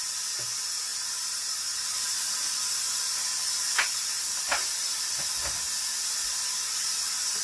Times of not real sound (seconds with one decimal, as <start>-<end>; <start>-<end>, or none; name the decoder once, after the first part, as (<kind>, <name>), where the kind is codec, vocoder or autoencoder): none